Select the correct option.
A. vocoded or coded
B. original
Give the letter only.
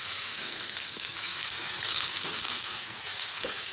A